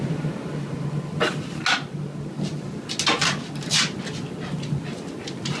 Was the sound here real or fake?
real